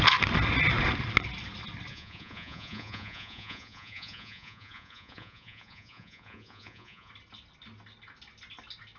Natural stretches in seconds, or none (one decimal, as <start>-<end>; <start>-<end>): 0.0-1.9; 7.1-9.0